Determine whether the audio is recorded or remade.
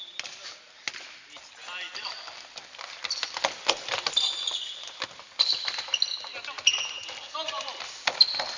recorded